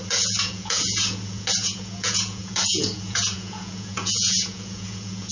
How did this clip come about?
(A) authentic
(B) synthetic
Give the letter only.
B